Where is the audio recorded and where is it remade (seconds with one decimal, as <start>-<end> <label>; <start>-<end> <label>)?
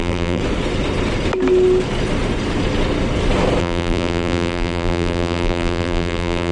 0.0-0.4 remade; 0.4-3.6 recorded; 3.6-6.5 remade